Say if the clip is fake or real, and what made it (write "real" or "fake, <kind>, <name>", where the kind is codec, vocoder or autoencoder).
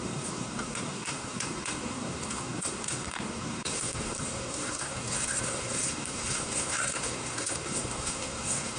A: fake, codec, SNAC